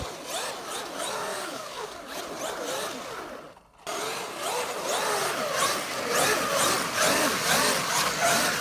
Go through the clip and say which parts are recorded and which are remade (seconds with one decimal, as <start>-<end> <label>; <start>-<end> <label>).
0.0-1.3 recorded; 1.3-2.2 remade; 2.2-8.6 recorded